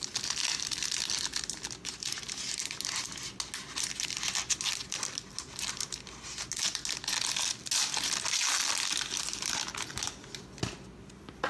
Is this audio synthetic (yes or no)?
no